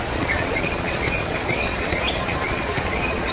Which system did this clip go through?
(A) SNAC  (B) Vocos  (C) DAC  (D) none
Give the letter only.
B